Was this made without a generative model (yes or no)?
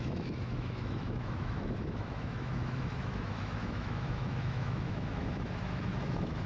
no